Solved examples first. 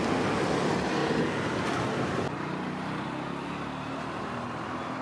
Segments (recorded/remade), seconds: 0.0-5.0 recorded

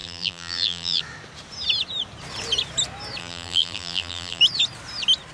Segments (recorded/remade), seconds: 0.0-1.0 remade; 1.0-3.2 recorded; 3.2-4.4 remade; 4.4-5.3 recorded